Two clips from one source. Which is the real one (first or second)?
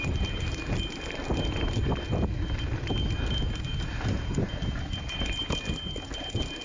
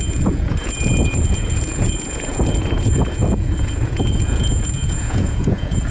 first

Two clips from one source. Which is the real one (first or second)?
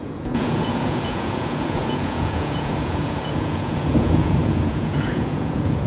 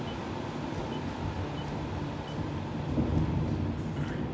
second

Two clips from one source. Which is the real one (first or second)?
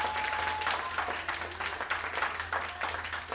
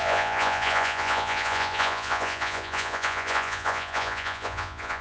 first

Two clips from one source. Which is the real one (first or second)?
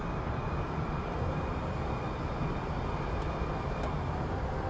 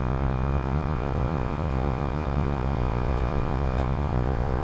first